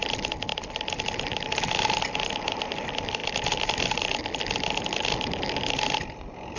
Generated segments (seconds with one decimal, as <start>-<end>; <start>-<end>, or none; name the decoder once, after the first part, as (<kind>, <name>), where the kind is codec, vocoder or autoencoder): none